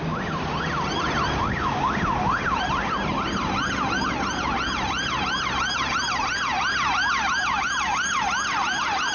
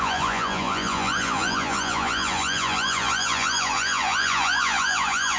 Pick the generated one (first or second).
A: second